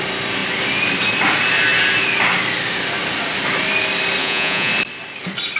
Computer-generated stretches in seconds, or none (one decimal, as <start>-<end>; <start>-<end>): 4.2-4.7